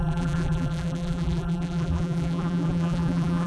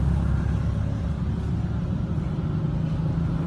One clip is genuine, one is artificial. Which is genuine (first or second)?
second